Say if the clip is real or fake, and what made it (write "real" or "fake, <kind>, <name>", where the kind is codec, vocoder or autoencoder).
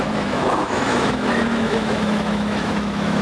fake, autoencoder, DAC-VAE